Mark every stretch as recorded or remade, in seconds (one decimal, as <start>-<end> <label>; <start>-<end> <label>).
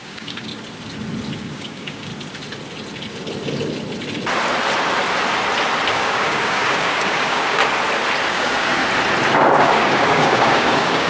0.0-0.5 remade; 0.5-1.3 recorded; 1.3-2.1 remade; 2.1-5.9 recorded; 5.9-7.6 remade; 7.6-8.3 recorded; 8.3-8.8 remade; 8.8-9.6 recorded; 9.6-11.1 remade